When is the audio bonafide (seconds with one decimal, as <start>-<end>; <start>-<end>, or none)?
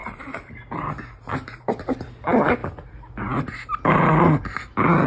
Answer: 2.6-5.1